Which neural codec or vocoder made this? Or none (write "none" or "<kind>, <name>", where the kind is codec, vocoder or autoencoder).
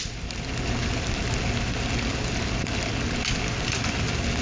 none